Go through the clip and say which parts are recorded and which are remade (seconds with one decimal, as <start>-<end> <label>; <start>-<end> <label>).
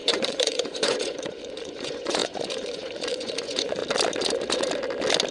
0.0-3.8 remade; 3.8-5.3 recorded